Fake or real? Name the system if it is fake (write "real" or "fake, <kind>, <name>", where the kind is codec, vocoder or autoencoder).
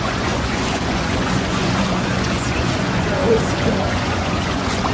fake, vocoder, Vocos